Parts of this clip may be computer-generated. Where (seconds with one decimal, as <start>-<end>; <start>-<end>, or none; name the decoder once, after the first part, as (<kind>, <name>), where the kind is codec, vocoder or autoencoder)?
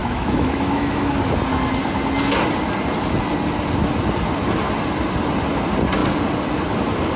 0.0-1.1 (autoencoder, DAC-VAE)